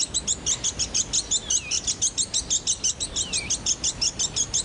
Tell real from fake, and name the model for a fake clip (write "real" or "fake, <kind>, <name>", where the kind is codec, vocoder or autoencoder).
real